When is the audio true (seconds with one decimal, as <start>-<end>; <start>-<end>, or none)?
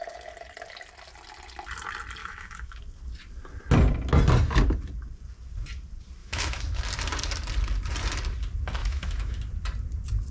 0.0-2.2; 2.8-6.2; 6.8-8.8; 9.4-10.3